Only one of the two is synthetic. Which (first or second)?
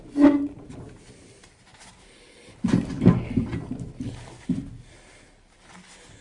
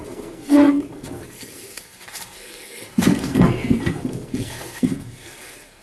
second